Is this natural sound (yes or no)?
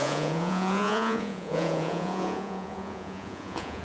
no